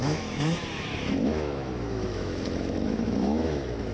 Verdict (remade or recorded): remade